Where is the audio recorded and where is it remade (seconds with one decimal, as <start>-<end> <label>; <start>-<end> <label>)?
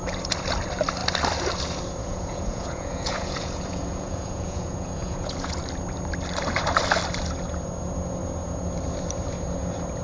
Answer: 0.0-2.0 recorded; 2.0-5.6 remade; 5.6-10.0 recorded